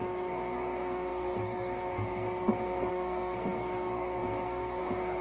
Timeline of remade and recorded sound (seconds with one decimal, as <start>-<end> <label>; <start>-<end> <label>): 0.0-5.2 remade